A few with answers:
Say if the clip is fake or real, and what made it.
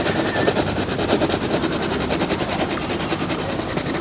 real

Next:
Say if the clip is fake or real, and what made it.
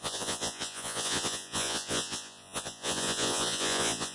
fake, vocoder, Vocos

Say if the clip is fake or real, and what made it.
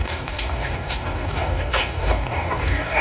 fake, codec, DAC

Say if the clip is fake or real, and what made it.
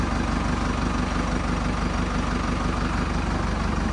real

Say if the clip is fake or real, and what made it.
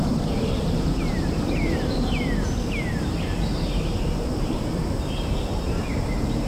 fake, vocoder, BigVGAN v2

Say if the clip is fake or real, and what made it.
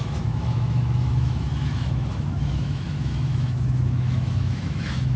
fake, autoencoder, DAC-VAE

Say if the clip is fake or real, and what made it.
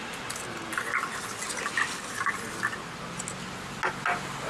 real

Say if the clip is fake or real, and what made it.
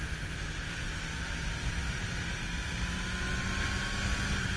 real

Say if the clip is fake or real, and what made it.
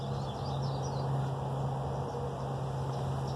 real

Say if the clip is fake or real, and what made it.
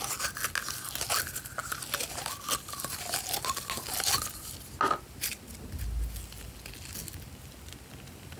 real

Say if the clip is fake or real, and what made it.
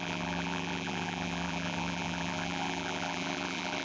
fake, vocoder, BigVGAN v2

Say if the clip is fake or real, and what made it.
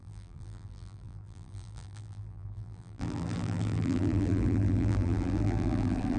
fake, vocoder, BigVGAN v2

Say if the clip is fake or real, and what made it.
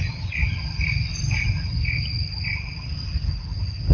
real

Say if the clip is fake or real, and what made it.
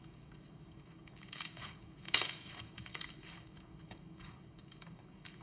fake, codec, DAC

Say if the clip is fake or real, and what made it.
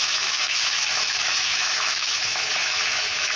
fake, autoencoder, DAC-VAE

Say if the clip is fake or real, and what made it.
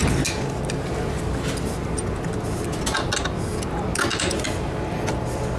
real